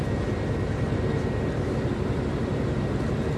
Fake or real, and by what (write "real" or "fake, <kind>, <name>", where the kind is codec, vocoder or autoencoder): real